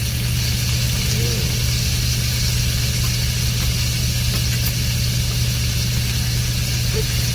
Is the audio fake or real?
real